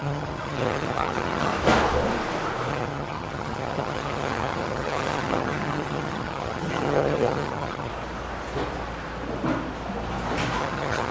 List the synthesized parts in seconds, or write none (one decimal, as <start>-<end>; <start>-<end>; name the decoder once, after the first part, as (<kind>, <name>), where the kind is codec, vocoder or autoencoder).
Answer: 0.0-1.5 (vocoder, HiFi-GAN); 2.7-7.9; 10.6-11.1